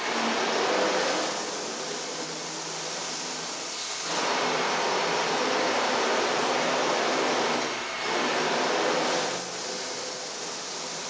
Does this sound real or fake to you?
real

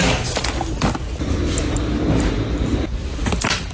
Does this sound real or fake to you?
real